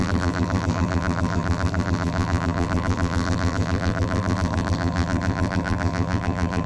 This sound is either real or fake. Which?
fake